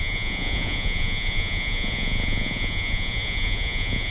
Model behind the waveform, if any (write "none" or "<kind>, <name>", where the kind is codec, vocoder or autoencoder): vocoder, Vocos